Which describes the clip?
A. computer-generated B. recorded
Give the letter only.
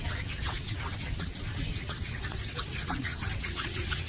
A